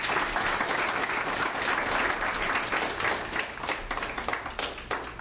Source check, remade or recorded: recorded